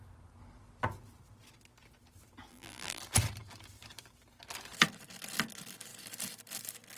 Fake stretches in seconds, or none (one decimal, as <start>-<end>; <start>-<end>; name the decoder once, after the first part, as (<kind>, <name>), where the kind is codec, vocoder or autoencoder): 2.5-3.0 (vocoder, BigVGAN v2)